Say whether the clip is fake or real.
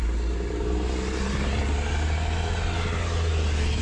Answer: real